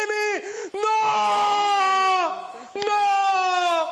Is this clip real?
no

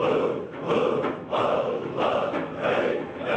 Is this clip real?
no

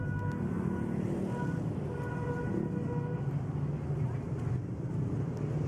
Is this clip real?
yes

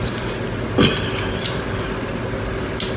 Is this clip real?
yes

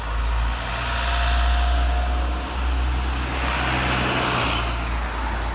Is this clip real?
yes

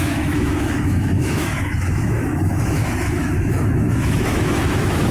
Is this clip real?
no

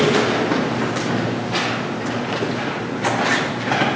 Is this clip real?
yes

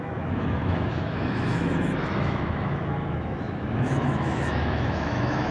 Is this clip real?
no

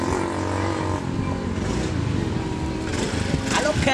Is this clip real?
yes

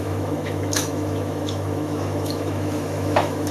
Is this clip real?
no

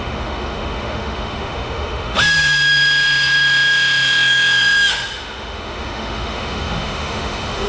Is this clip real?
no